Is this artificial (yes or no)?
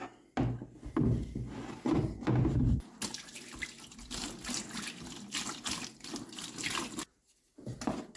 no